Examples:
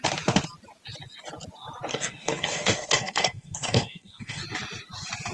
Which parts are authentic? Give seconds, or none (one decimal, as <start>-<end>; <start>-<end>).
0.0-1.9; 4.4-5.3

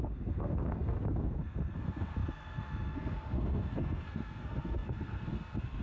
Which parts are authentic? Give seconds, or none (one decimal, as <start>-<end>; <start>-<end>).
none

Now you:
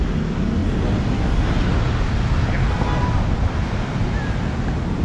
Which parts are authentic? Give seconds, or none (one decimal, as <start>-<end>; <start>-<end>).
0.0-5.0

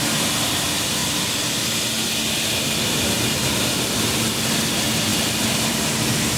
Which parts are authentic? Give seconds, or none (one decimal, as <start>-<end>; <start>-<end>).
0.0-6.4

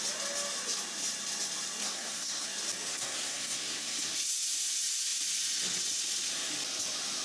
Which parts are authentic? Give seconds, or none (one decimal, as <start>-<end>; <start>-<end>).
0.0-1.8; 2.5-2.9; 4.0-7.2

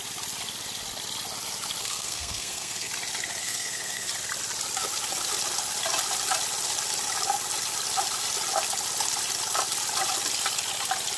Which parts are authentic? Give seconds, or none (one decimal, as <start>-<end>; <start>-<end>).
0.0-1.8; 2.9-3.4; 4.1-11.2

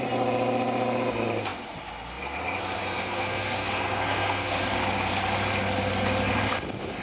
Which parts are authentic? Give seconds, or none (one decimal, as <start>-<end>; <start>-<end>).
0.0-2.8; 4.6-7.0